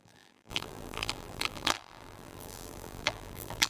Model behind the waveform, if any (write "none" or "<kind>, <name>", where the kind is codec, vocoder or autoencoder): vocoder, BigVGAN v2